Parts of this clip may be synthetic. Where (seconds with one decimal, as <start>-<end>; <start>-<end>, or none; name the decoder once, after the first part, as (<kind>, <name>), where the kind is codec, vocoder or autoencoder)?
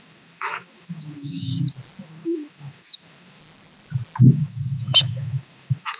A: 0.0-1.5 (autoencoder, DAC-VAE); 2.0-3.4; 4.3-6.0